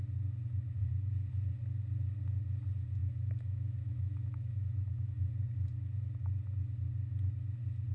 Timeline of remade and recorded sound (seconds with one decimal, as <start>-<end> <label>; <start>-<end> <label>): 0.0-3.0 recorded; 3.0-5.3 remade; 5.3-7.9 recorded